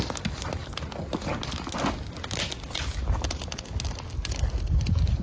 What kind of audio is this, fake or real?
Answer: real